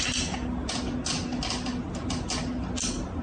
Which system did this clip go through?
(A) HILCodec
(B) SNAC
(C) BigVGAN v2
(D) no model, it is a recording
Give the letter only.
D